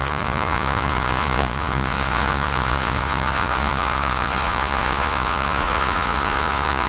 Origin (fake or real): fake